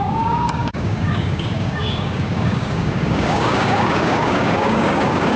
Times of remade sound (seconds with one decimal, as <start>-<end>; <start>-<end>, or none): 0.0-5.4